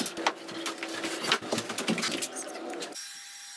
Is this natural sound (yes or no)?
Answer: yes